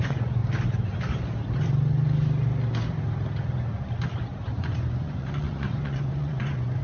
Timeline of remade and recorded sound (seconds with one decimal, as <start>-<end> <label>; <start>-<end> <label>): 0.0-0.4 remade; 0.4-4.5 recorded; 4.5-6.8 remade